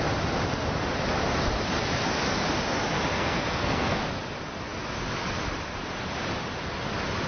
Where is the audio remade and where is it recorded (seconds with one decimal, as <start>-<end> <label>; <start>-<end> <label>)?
0.0-3.1 recorded; 3.1-4.0 remade; 4.0-7.3 recorded